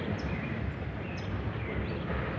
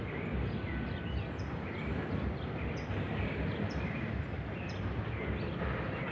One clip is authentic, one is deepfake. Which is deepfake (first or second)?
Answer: second